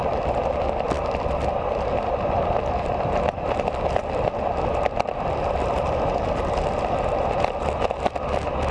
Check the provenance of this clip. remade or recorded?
recorded